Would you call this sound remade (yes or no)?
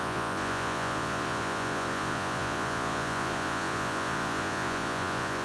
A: yes